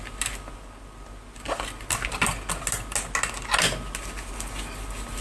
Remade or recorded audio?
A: recorded